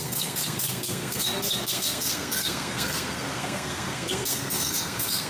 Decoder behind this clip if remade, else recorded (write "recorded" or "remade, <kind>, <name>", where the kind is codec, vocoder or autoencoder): remade, codec, SNAC